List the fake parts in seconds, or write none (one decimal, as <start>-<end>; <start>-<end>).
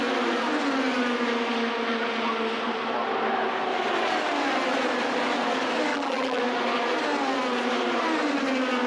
5.9-6.4